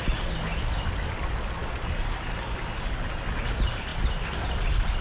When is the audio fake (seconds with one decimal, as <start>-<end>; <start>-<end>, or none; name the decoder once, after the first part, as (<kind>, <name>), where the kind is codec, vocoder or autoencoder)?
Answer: none